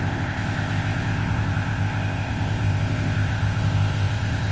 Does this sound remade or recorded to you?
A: remade